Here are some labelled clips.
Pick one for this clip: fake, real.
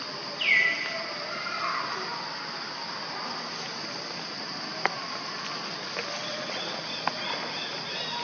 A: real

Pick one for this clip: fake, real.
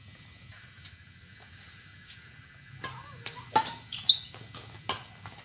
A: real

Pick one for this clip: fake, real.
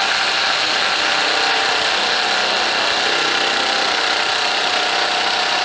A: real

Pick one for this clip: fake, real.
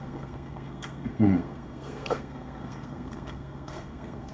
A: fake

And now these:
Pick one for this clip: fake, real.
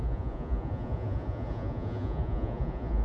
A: fake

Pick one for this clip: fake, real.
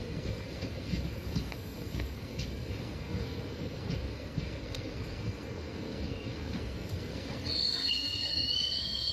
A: fake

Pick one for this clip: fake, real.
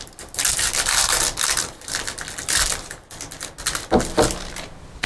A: real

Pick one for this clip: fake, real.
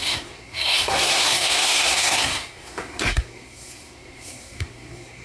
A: fake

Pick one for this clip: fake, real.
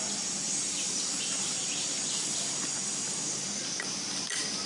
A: real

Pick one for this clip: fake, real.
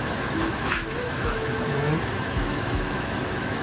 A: fake